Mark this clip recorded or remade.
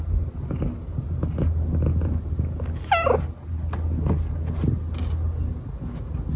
recorded